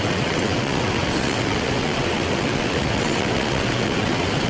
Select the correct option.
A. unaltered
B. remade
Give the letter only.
B